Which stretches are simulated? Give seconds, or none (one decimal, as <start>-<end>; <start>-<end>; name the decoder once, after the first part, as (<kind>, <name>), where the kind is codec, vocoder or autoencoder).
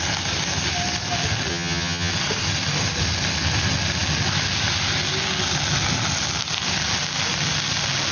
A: 1.5-2.1 (vocoder, HiFi-GAN)